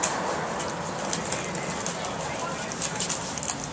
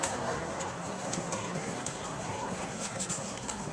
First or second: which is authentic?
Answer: first